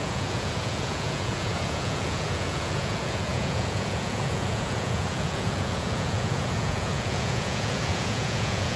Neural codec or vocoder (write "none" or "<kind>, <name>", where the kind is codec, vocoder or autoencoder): vocoder, Vocos